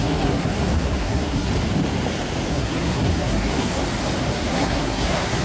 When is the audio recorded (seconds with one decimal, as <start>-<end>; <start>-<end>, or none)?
1.5-2.5; 3.8-4.3